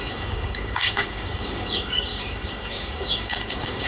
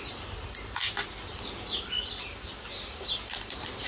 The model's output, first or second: first